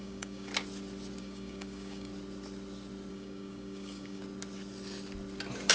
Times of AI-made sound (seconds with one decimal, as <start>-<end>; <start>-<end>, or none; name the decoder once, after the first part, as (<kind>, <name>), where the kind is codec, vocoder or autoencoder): 0.0-0.5 (codec, DAC); 1.2-2.1; 3.1-4.2